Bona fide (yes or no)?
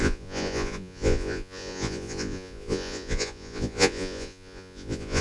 no